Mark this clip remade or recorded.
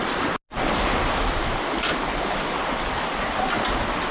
recorded